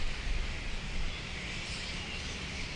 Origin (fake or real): real